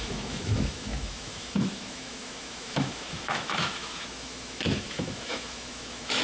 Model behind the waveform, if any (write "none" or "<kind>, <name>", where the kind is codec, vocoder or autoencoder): autoencoder, DAC-VAE